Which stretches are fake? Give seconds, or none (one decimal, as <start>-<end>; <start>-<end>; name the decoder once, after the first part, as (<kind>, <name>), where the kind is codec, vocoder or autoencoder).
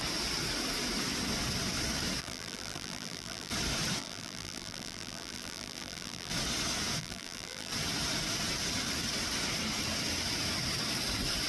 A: 2.2-3.5 (vocoder, BigVGAN v2); 4.0-6.3; 7.0-7.7